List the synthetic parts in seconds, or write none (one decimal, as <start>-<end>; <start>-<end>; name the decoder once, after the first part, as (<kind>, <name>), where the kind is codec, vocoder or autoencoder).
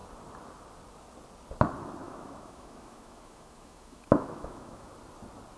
2.0-4.9 (autoencoder, DAC-VAE)